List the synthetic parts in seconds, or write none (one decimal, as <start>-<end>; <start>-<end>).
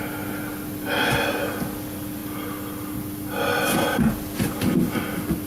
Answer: none